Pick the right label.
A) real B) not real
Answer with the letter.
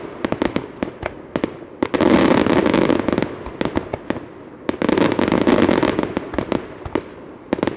A